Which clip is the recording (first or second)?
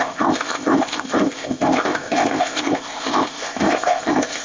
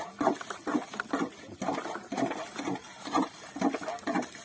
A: second